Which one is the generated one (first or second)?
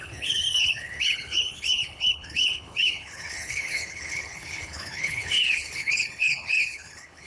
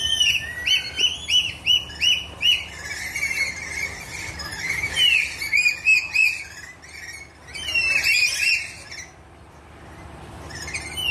first